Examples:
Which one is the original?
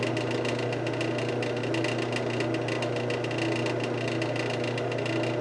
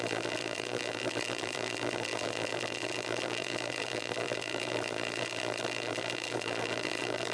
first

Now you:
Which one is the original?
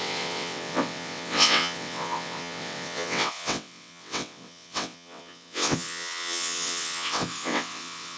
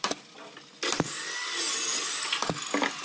second